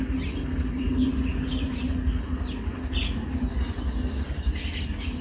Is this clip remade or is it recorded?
recorded